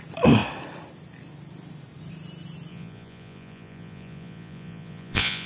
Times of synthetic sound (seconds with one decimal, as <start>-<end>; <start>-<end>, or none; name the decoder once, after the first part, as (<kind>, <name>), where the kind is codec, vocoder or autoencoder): 2.7-5.5 (vocoder, Vocos)